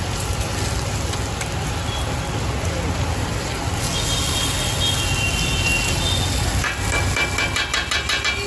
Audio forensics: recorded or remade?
recorded